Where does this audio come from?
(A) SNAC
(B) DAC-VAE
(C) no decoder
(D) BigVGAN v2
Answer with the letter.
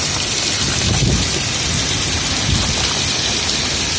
C